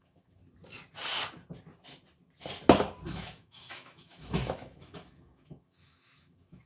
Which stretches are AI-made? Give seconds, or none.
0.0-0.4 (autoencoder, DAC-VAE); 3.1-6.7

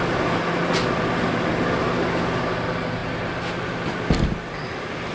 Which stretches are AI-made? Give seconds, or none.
none

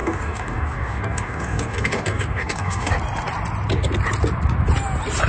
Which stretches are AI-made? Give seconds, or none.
0.0-2.9 (codec, DAC)

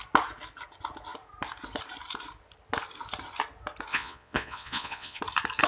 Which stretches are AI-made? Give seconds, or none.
3.9-5.2 (vocoder, Vocos)

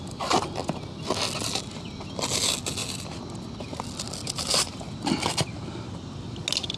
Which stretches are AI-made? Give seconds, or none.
2.8-3.8 (vocoder, BigVGAN v2); 4.2-4.7

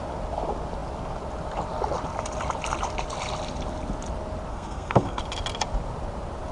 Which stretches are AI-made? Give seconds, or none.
4.5-5.2 (codec, SNAC)

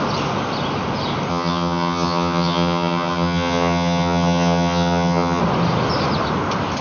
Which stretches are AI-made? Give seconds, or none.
1.3-5.4 (vocoder, HiFi-GAN)